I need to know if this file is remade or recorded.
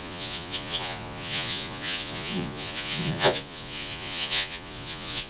remade